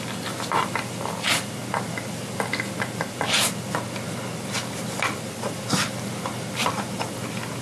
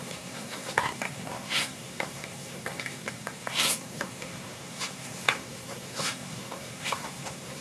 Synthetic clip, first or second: second